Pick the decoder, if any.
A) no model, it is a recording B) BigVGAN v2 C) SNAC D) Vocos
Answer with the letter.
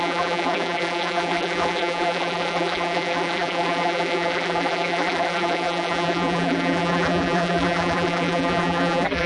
B